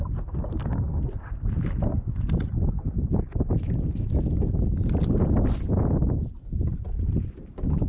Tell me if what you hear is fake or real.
real